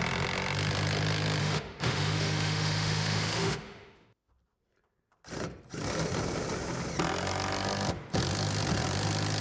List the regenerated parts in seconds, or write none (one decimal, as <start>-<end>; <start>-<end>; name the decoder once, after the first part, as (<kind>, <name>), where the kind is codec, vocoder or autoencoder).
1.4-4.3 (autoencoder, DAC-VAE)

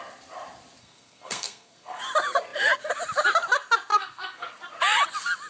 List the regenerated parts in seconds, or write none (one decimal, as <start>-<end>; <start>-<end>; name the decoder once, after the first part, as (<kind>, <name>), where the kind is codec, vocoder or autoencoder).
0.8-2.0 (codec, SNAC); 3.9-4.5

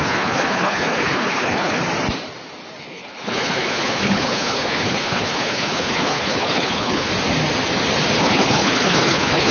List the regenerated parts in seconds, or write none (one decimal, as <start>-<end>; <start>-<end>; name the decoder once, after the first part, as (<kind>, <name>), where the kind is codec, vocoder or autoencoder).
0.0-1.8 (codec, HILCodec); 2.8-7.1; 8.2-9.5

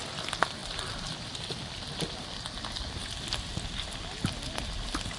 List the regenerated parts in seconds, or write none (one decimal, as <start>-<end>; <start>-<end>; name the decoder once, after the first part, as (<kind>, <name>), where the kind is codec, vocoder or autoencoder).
none

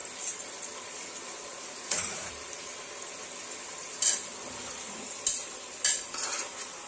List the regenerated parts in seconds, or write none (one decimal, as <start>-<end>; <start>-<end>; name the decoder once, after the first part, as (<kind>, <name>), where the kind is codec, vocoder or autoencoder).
1.5-2.3 (vocoder, Vocos)